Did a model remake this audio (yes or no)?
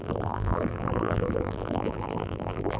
yes